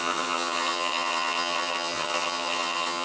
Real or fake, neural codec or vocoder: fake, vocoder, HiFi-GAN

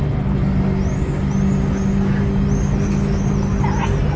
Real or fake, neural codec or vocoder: real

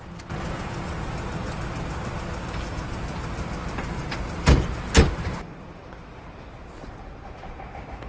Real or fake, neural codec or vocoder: real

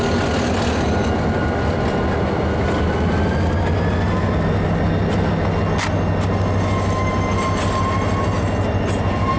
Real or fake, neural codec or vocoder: real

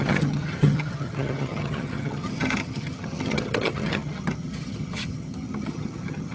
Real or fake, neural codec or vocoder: fake, vocoder, HiFi-GAN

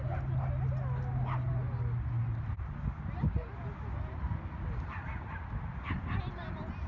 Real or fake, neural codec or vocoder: real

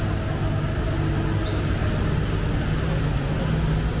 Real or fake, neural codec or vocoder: real